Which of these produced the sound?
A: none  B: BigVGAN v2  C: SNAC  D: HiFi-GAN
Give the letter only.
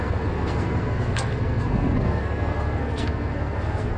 C